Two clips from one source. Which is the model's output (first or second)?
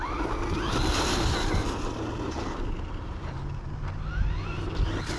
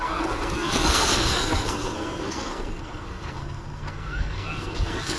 second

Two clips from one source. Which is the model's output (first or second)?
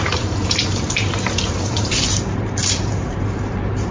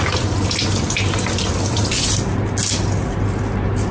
first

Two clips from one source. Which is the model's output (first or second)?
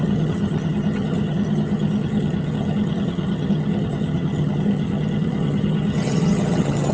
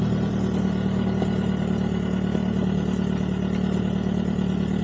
first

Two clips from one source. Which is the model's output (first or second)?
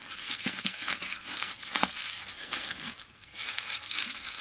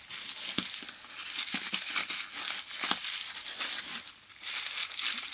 first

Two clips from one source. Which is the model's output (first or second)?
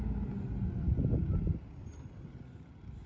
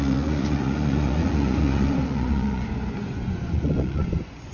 second